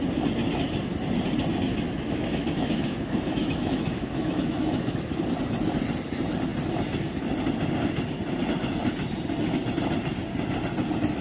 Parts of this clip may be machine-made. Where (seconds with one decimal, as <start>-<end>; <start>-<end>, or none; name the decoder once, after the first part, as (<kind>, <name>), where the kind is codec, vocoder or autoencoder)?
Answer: 1.7-5.2 (autoencoder, DAC-VAE)